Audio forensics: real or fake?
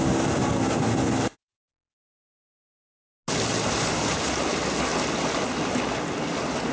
real